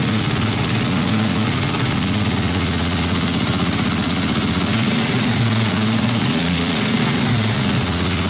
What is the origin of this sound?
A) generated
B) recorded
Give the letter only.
A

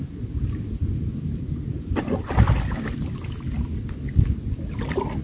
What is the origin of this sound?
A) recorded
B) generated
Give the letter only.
A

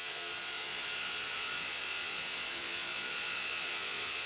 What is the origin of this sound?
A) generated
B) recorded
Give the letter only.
A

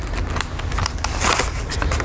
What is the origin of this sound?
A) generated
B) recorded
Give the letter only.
B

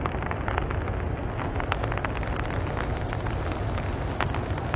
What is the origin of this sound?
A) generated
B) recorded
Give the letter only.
B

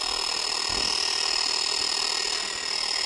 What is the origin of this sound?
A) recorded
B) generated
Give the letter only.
A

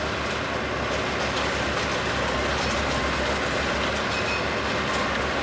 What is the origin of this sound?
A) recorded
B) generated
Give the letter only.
A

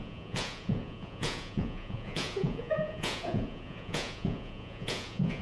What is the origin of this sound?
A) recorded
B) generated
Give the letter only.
B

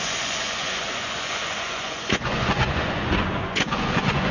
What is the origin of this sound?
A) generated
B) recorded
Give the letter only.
A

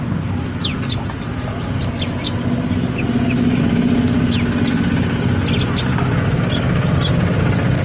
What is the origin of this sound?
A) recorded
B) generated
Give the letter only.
A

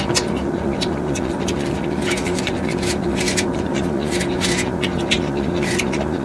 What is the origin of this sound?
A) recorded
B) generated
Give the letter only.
B